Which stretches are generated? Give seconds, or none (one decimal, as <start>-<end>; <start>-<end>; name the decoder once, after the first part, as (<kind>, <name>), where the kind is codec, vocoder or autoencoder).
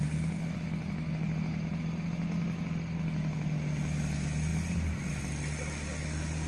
none